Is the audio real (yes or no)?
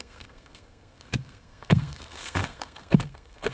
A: no